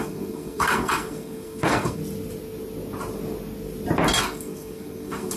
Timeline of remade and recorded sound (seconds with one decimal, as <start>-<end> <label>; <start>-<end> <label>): 0.0-2.0 remade; 2.0-4.2 recorded; 4.2-5.4 remade